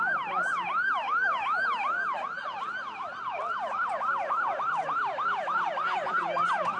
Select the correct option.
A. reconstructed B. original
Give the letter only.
B